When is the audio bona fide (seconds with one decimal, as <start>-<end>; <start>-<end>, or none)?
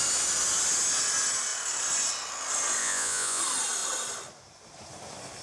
0.0-2.8; 3.4-5.4